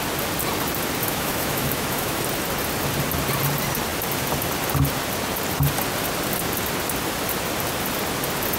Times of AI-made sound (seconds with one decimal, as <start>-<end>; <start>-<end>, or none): 1.0-2.2